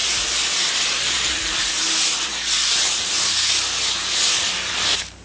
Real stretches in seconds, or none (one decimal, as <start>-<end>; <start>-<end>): 3.1-5.2